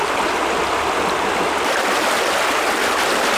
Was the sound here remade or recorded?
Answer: recorded